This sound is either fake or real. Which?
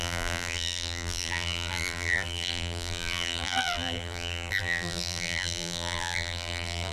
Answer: fake